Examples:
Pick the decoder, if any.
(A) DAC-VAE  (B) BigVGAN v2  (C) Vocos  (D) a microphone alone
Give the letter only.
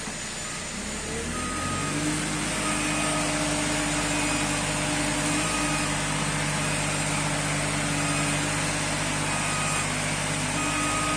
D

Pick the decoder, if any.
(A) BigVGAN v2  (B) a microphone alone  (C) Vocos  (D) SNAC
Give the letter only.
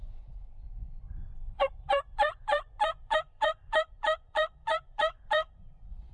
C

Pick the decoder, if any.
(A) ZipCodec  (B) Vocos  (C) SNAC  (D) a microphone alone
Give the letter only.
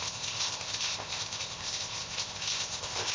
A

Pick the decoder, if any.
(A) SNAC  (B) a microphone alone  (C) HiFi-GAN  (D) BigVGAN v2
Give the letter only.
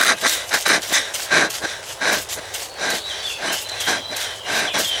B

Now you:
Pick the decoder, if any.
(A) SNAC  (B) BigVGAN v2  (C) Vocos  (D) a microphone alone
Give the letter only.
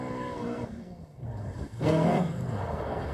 A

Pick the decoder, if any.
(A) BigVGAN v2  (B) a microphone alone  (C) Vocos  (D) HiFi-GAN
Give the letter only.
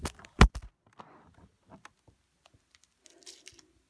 B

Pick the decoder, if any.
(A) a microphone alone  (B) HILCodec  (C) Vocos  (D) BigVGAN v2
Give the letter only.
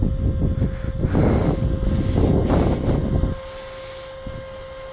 A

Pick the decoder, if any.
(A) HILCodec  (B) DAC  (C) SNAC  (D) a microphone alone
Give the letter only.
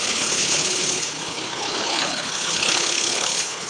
A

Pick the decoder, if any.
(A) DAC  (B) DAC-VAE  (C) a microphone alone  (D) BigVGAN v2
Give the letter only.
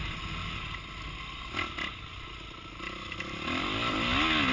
C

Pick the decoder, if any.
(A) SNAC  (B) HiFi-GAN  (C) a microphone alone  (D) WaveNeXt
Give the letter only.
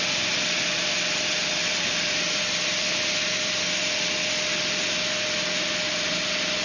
C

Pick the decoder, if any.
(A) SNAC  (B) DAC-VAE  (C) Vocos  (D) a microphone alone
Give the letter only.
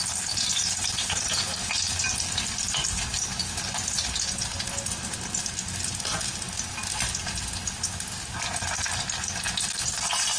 D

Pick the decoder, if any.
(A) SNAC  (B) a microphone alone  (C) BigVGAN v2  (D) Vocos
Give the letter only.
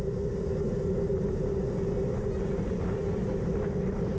B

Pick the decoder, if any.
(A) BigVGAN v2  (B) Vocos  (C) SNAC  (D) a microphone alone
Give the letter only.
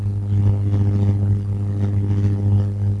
D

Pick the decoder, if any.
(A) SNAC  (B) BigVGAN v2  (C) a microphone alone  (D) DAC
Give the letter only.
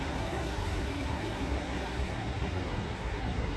A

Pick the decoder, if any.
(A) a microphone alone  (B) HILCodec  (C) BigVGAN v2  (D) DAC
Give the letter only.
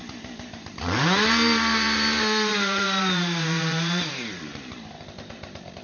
C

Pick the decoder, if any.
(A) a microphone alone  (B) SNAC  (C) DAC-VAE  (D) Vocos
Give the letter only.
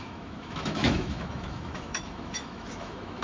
C